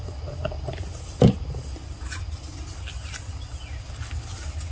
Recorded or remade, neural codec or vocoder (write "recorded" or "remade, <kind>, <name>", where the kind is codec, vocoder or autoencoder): recorded